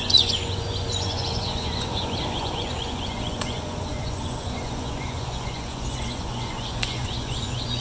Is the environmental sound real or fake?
fake